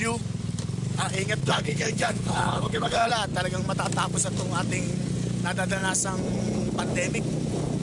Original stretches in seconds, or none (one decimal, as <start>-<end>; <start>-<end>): 0.0-1.4; 3.1-7.8